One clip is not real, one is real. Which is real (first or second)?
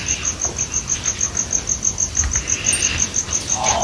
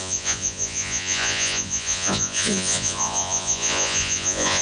first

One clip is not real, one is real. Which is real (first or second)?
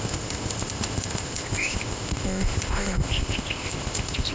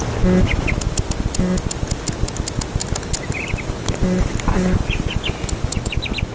second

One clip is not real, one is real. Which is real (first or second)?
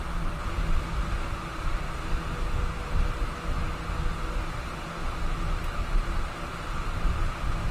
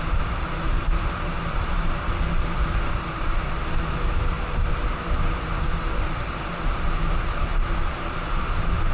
first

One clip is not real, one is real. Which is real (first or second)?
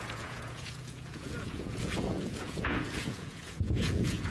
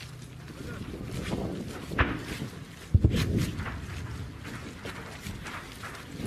second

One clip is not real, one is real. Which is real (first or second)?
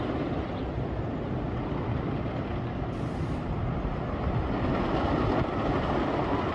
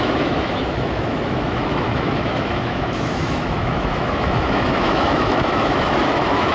first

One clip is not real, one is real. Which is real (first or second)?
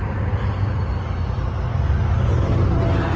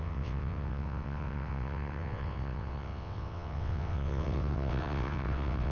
first